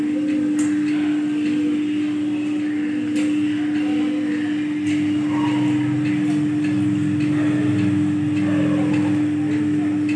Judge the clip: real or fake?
real